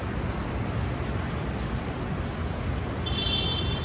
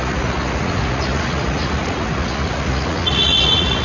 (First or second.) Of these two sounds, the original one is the first